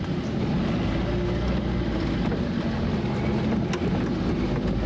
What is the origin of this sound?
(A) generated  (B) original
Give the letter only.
B